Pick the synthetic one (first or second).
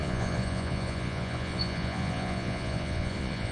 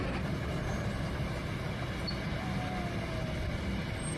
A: first